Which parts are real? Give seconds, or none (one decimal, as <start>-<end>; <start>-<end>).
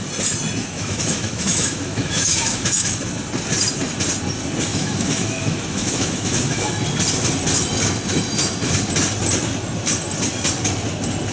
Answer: 0.0-0.6; 3.0-4.7; 6.7-11.3